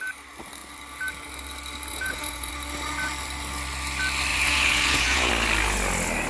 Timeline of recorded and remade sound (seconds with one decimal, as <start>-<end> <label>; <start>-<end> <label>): 0.0-1.9 recorded; 1.9-2.5 remade; 2.5-4.3 recorded; 4.3-5.3 remade; 5.3-6.3 recorded